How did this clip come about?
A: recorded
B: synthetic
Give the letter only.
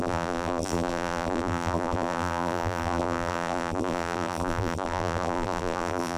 B